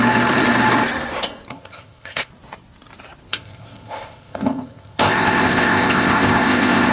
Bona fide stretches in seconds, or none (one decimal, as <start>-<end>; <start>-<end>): 0.0-1.5; 2.3-3.3